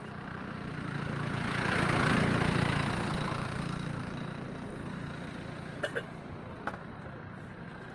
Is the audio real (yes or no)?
yes